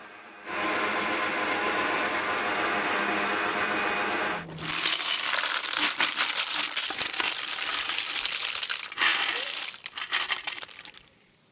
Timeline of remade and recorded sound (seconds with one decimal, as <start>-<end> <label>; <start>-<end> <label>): 0.0-11.5 recorded